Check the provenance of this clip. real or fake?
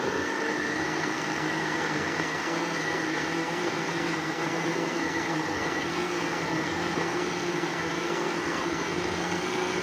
fake